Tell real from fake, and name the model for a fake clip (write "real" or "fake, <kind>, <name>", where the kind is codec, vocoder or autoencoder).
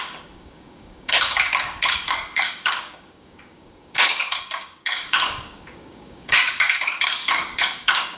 fake, codec, DAC